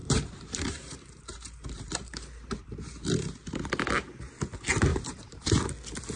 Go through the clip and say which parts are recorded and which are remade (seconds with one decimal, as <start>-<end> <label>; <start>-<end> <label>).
0.0-3.7 remade; 3.7-4.9 recorded; 4.9-5.7 remade; 5.7-6.2 recorded